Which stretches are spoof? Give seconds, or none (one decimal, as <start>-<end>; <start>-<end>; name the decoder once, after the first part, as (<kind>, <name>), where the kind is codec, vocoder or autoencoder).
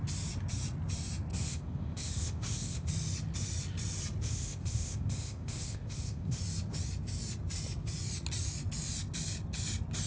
1.3-2.9 (codec, ZipCodec); 4.2-6.4